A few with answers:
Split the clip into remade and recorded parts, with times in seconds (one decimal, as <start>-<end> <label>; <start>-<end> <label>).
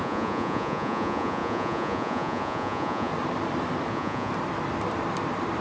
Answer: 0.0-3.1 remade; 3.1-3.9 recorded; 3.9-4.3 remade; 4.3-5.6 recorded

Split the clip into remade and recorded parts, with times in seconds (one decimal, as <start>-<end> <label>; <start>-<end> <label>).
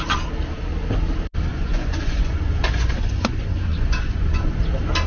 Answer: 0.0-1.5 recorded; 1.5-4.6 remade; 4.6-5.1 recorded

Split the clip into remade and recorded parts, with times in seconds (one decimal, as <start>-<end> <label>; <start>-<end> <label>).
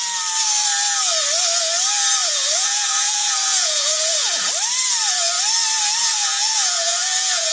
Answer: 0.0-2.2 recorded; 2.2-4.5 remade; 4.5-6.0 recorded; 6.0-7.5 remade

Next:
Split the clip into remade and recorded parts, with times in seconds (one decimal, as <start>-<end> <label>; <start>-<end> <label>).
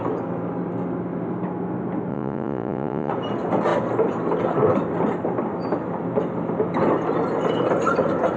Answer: 0.0-2.1 recorded; 2.1-3.1 remade; 3.1-8.4 recorded